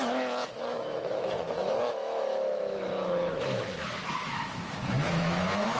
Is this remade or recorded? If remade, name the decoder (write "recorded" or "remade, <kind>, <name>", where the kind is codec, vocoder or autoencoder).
remade, autoencoder, DAC-VAE